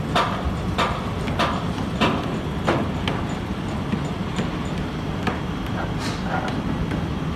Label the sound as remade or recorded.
recorded